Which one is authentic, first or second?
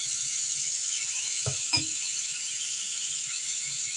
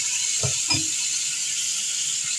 second